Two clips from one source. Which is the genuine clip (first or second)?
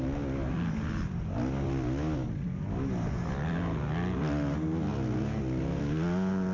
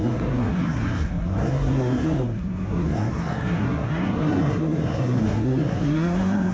first